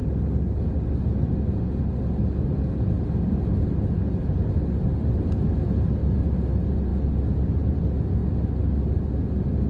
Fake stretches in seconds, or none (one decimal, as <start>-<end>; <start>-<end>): none

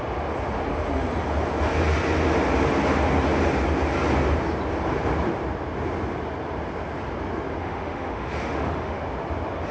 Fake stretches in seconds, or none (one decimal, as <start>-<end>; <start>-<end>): 7.6-9.0

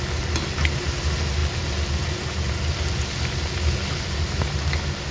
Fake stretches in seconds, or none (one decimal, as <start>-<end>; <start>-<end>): none